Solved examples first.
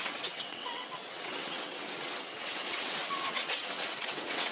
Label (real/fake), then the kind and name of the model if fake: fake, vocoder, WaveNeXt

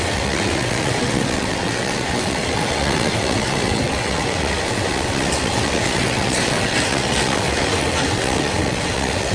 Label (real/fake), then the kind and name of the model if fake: fake, vocoder, WaveNeXt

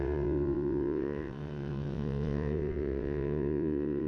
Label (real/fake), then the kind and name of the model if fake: fake, vocoder, WaveNeXt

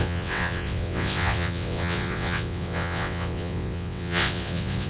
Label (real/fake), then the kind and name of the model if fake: fake, vocoder, WaveNeXt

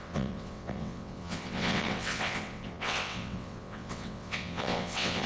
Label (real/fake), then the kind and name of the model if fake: fake, vocoder, WaveNeXt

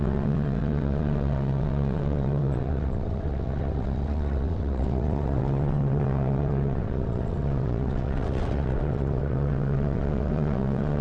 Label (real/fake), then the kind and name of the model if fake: fake, vocoder, WaveNeXt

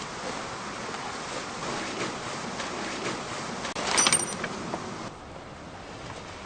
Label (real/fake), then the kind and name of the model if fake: real